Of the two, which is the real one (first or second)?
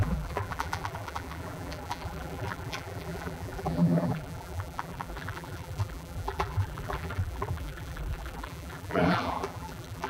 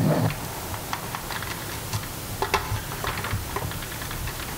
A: second